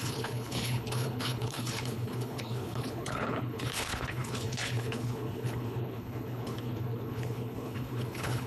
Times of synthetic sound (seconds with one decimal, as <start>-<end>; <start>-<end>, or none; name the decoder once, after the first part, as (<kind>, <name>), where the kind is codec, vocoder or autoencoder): 0.0-8.5 (codec, HILCodec)